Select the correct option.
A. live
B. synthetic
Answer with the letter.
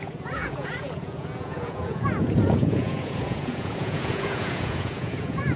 B